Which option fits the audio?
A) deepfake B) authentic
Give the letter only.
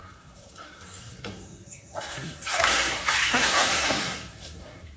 A